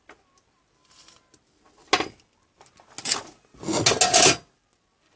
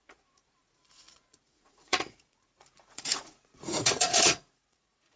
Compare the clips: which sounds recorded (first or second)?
first